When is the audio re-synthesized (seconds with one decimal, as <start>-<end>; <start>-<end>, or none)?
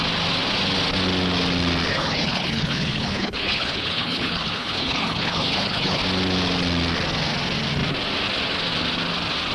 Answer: 1.9-6.0